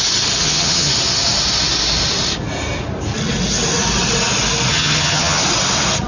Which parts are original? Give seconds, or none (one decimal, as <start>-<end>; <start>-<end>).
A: 0.0-0.4; 0.9-4.7; 5.4-6.1